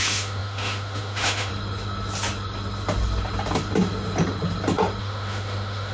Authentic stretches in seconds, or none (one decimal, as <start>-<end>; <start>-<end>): 1.5-5.0